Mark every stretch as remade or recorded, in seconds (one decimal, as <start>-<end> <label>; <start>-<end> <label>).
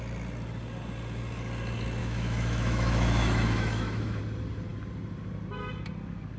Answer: 0.0-2.0 recorded; 2.0-4.2 remade; 4.2-6.4 recorded